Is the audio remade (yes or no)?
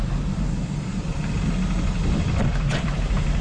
no